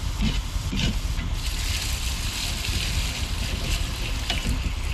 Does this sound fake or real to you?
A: real